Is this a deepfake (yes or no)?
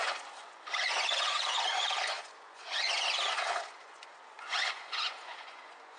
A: yes